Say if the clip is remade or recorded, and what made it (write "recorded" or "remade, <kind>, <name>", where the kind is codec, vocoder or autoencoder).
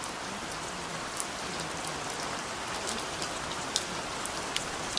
recorded